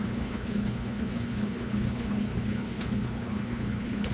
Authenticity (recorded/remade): remade